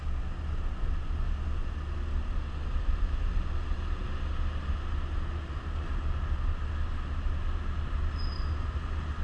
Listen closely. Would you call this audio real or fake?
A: real